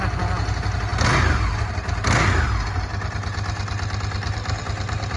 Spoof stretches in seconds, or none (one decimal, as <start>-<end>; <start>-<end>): none